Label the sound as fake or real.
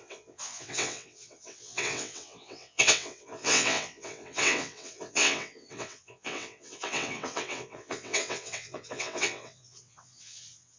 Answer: fake